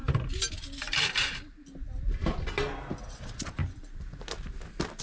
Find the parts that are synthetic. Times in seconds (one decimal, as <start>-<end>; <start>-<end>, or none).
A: 3.0-3.6